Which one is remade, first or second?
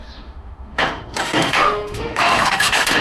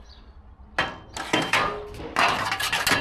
first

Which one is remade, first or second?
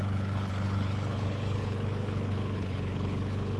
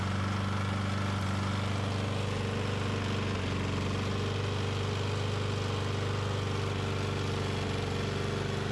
first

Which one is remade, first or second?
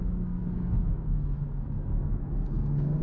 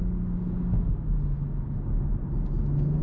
first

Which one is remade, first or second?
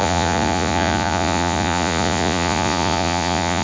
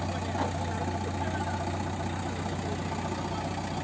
first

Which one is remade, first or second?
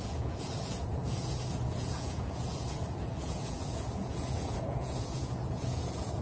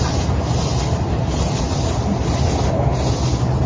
first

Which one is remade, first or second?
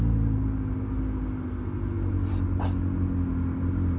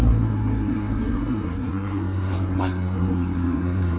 second